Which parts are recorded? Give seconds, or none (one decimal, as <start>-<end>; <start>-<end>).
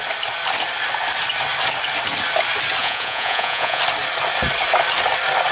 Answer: 0.0-2.8; 3.8-5.5